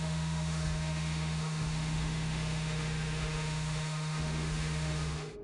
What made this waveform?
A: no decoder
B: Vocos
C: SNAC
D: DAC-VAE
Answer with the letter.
D